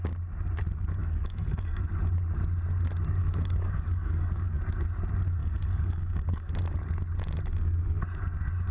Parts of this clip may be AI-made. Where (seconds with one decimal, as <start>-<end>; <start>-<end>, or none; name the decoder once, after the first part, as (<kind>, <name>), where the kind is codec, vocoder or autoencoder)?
1.0-1.8 (codec, DAC); 3.2-4.6; 5.4-6.5